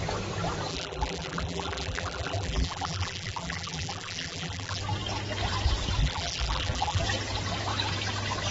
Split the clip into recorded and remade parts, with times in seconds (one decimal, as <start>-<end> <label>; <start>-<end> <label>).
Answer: 0.0-0.7 recorded; 0.7-4.8 remade; 4.8-6.0 recorded; 6.0-7.0 remade; 7.0-8.5 recorded